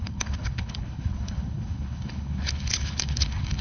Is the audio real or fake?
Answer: fake